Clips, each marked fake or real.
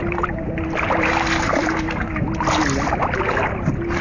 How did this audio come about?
real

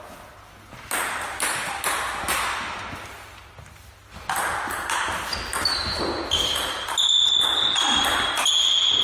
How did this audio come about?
real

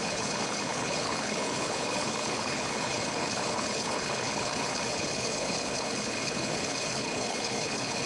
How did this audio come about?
fake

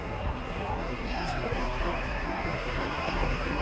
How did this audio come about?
fake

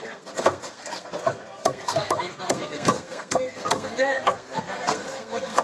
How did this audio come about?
fake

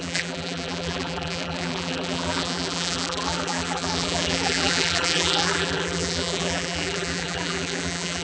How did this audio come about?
fake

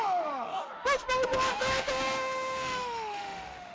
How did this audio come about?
fake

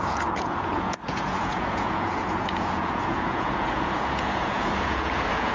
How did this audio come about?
fake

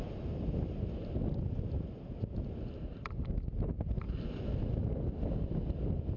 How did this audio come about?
real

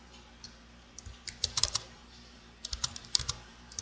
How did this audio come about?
fake